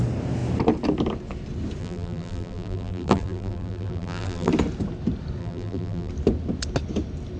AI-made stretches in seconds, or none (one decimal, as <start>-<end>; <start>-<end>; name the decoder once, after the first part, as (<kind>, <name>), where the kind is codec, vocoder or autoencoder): 1.8-4.5 (vocoder, BigVGAN v2); 5.4-6.1